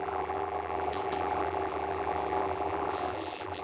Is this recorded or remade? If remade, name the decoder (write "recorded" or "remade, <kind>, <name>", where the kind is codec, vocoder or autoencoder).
remade, vocoder, BigVGAN v2